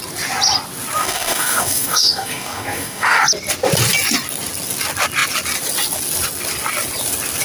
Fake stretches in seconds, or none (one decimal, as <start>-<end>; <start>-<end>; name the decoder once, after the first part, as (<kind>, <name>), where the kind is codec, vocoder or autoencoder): 1.0-3.2 (codec, DAC)